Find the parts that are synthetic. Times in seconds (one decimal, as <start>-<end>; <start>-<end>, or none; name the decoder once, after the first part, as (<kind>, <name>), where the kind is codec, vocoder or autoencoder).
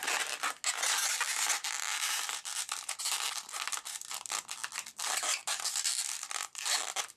1.5-7.2 (vocoder, BigVGAN v2)